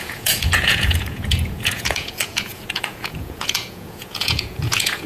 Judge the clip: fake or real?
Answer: fake